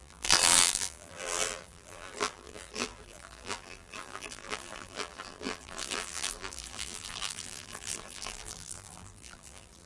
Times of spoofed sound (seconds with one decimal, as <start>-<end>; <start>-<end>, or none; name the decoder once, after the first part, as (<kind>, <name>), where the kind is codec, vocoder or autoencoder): 0.0-9.9 (vocoder, BigVGAN v2)